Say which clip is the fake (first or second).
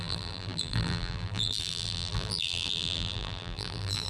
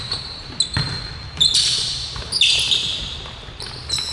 first